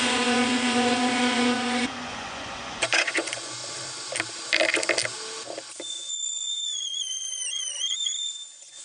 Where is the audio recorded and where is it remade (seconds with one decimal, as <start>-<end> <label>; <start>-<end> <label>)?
0.0-3.6 remade; 3.6-5.9 recorded; 5.9-8.8 remade